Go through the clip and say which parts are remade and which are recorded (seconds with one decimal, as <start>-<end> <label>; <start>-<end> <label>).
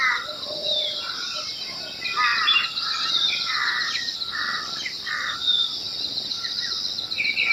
0.0-0.6 recorded; 0.6-1.8 remade; 1.8-2.3 recorded; 2.3-3.1 remade; 3.1-7.5 recorded